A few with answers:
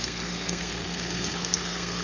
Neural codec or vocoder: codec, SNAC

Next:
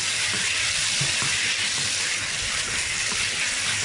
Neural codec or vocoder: none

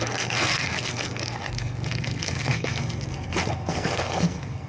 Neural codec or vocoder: codec, SNAC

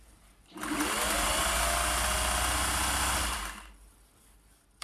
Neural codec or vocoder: none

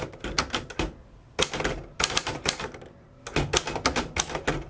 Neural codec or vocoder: none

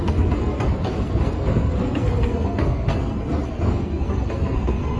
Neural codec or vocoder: codec, SNAC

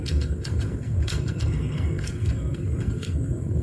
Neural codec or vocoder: codec, SNAC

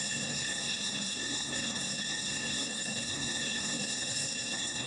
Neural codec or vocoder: codec, SNAC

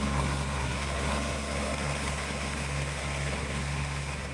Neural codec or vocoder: codec, SNAC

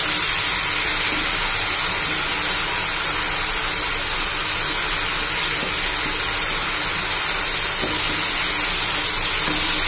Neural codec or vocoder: none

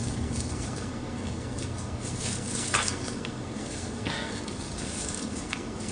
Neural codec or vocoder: codec, SNAC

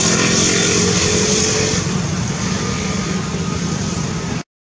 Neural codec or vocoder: none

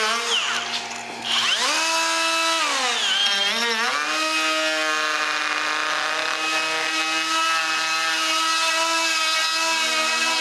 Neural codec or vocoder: none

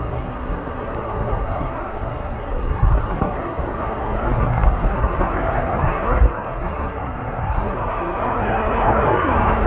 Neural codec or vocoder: codec, SNAC